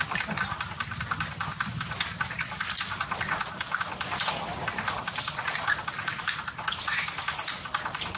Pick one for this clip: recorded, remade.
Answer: remade